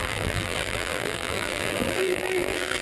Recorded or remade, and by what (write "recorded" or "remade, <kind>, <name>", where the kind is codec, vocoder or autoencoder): remade, vocoder, BigVGAN v2